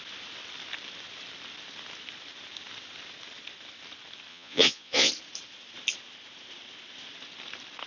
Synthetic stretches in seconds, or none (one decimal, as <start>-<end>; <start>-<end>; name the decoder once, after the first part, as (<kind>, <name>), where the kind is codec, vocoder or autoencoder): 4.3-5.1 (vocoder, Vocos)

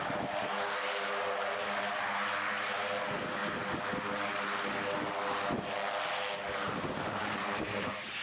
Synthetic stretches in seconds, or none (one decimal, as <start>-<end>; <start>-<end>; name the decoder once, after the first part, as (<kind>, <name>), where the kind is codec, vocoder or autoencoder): 7.2-8.2 (vocoder, BigVGAN v2)

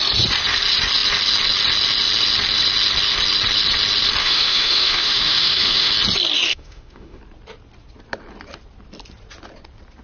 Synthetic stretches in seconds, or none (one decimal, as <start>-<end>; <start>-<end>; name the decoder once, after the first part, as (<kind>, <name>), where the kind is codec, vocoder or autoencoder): 4.2-5.9 (autoencoder, DAC-VAE); 6.5-7.2

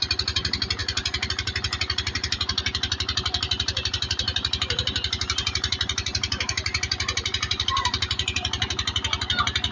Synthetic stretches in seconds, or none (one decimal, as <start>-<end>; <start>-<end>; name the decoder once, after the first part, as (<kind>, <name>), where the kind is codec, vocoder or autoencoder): 0.0-9.7 (vocoder, BigVGAN v2)

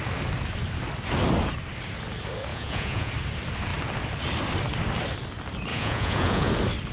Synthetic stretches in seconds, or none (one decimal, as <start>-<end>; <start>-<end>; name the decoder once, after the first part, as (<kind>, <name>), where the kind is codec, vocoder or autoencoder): 2.5-3.1 (vocoder, Vocos); 5.7-6.5

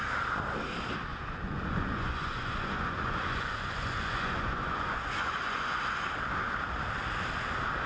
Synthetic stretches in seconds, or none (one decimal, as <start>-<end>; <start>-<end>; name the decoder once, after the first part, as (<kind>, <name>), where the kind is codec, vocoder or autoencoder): 1.1-5.8 (vocoder, Vocos)

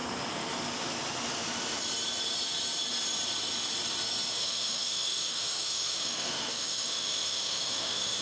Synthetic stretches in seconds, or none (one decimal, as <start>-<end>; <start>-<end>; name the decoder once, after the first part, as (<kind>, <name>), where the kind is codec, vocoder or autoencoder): 4.3-8.2 (autoencoder, DAC-VAE)

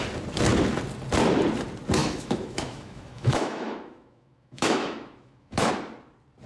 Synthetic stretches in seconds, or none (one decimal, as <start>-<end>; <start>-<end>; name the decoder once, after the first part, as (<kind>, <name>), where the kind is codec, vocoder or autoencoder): 2.0-5.7 (autoencoder, DAC-VAE)